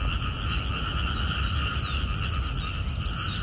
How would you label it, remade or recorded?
recorded